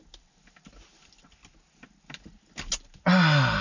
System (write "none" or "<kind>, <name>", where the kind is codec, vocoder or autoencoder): none